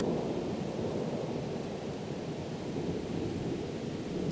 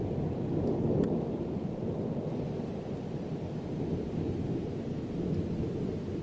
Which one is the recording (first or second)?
second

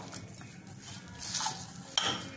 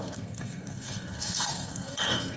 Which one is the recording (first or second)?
first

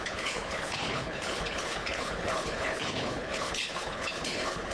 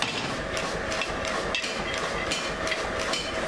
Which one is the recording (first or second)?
second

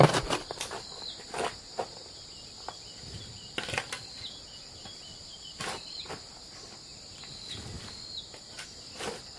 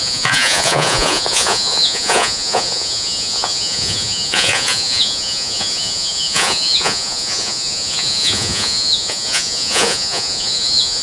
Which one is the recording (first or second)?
first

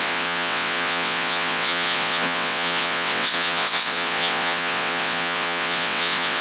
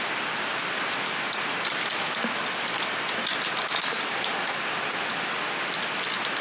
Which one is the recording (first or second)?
second